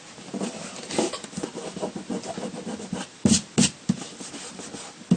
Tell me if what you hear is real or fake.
real